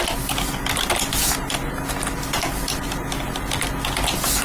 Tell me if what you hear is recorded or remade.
recorded